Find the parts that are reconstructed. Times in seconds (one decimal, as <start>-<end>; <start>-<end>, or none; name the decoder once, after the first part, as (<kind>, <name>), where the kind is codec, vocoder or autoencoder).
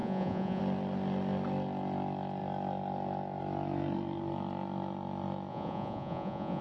0.0-0.6 (vocoder, Vocos); 5.5-6.6